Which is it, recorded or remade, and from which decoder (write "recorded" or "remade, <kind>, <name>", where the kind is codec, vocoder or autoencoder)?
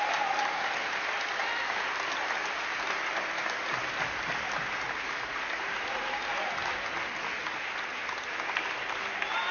recorded